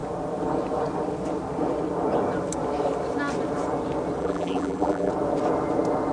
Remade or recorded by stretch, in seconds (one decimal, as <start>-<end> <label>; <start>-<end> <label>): 0.0-4.2 recorded; 4.2-5.1 remade; 5.1-6.1 recorded